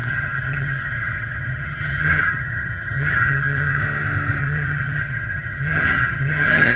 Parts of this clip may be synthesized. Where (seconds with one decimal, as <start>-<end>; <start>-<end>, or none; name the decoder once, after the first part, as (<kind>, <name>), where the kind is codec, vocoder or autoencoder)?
0.0-3.8 (vocoder, HiFi-GAN); 4.4-6.8